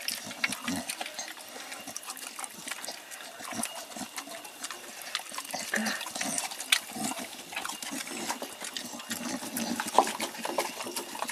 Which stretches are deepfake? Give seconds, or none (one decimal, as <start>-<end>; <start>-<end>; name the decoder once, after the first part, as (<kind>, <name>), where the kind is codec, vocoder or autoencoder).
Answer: none